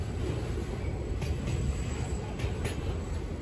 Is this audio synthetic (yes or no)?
no